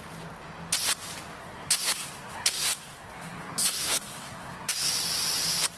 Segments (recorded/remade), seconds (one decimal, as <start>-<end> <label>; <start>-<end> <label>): 0.0-1.4 recorded; 1.4-4.9 remade; 4.9-5.8 recorded